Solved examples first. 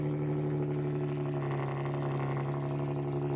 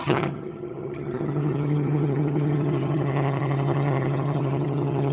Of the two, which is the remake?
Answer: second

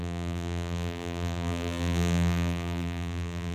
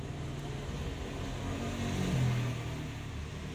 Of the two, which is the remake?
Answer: first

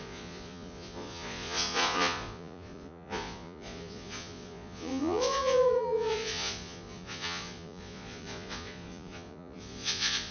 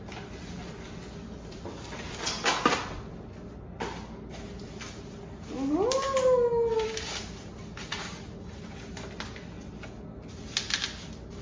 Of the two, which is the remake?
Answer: first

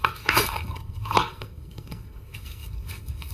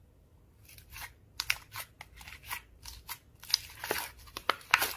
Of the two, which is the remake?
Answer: first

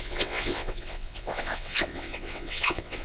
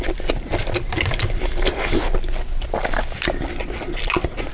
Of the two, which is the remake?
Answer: first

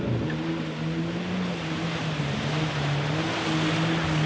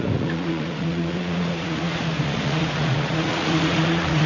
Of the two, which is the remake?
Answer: second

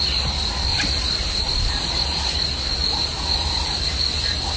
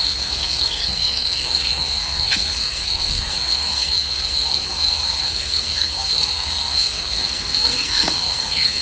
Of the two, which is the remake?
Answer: second